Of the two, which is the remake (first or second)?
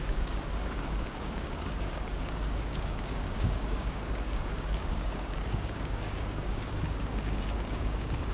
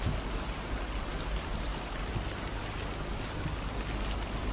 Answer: first